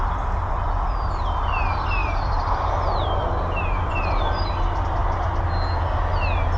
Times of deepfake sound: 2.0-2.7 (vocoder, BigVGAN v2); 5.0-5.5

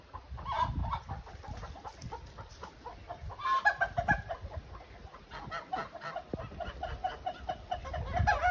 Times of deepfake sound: 0.8-1.3 (vocoder, BigVGAN v2)

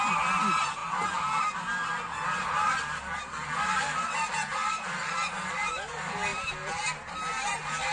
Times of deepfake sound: none

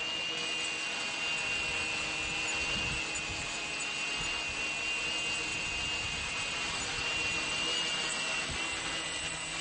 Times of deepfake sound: 5.5-7.6 (vocoder, BigVGAN v2)

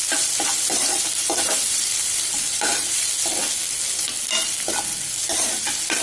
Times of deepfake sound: 0.5-3.1 (vocoder, BigVGAN v2)

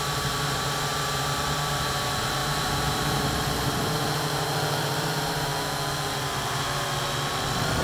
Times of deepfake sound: 0.0-5.5 (vocoder, BigVGAN v2)

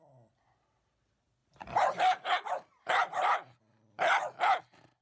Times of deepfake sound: 1.4-4.1 (vocoder, BigVGAN v2)

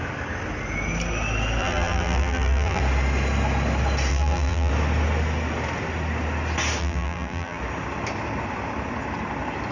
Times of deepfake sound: 1.6-2.8 (vocoder, BigVGAN v2); 4.1-4.7; 6.8-7.6